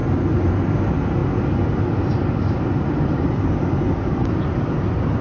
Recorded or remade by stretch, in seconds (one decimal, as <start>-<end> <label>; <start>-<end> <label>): 0.0-5.2 recorded